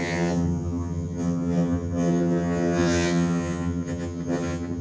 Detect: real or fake fake